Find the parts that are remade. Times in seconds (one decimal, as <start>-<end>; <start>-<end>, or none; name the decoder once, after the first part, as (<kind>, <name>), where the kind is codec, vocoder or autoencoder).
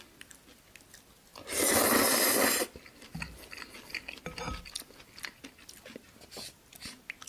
none